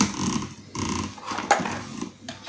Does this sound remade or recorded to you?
recorded